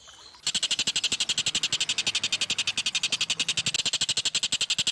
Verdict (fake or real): real